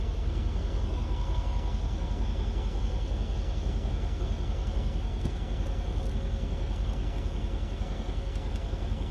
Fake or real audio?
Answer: fake